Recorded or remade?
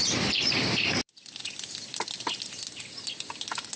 recorded